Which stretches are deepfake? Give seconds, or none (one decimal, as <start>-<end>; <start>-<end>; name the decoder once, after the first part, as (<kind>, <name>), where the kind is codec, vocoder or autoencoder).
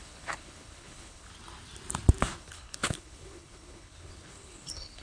0.0-1.3 (codec, HILCodec); 2.4-5.0